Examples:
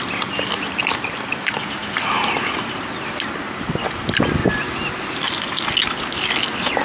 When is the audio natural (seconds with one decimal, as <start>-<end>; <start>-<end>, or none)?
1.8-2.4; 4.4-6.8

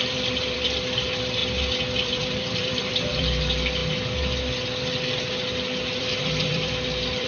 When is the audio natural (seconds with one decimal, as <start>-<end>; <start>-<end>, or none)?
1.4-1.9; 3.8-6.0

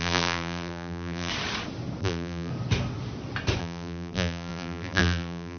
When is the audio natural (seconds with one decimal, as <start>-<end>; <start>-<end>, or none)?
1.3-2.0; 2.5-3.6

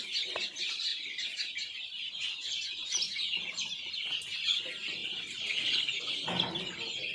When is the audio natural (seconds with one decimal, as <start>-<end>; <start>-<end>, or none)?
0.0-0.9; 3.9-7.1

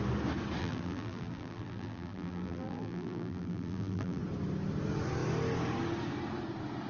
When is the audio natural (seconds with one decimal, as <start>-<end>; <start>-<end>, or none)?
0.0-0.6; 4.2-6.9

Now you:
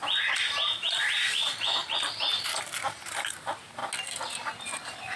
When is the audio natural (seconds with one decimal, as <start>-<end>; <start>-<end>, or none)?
1.8-2.6; 3.8-4.6